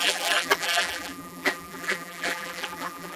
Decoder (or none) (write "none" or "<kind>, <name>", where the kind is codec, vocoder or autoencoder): vocoder, BigVGAN v2